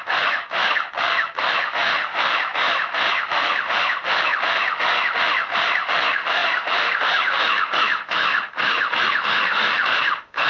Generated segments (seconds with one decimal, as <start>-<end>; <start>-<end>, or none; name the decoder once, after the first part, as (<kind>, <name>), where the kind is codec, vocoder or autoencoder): 0.0-10.5 (autoencoder, DAC-VAE)